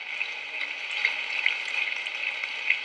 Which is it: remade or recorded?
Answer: recorded